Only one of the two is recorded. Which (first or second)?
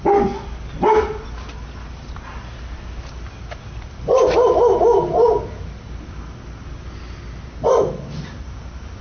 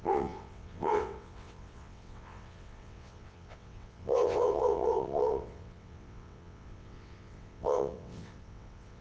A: first